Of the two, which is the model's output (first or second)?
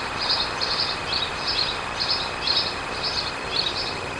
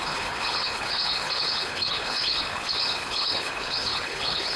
second